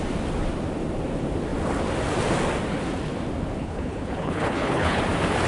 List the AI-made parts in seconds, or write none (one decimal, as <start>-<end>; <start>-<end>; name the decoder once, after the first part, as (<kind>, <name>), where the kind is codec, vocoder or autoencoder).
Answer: 3.6-5.0 (codec, HILCodec)

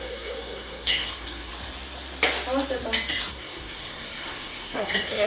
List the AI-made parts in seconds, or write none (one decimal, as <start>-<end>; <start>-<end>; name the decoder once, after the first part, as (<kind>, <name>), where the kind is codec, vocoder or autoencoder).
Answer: 0.0-1.5 (codec, SNAC); 3.3-5.3